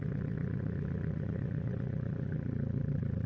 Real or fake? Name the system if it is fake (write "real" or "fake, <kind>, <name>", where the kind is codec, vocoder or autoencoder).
fake, vocoder, Vocos